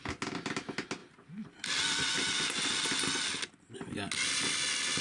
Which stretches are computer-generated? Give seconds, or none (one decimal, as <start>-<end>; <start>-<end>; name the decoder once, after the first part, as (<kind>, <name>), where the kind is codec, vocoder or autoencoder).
none